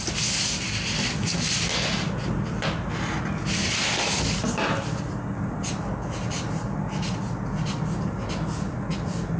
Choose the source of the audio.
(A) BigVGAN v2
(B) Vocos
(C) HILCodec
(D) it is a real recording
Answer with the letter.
D